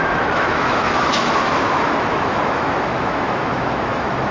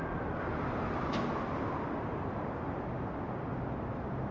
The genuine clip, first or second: second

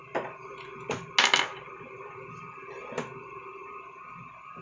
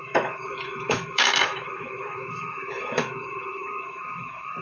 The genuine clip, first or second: first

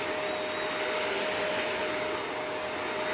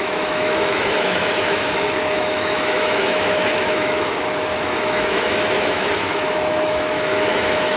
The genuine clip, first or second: first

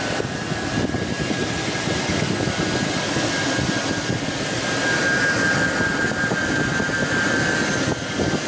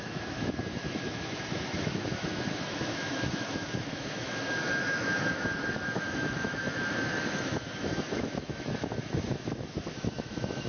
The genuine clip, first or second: first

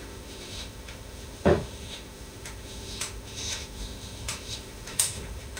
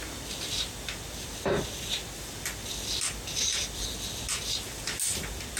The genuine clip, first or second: second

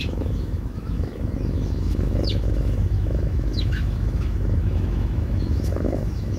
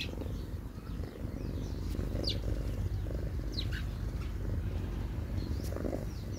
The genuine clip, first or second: second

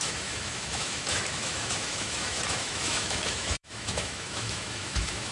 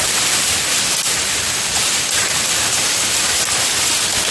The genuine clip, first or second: second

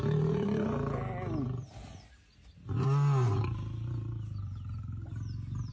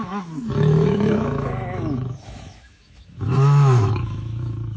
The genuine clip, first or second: first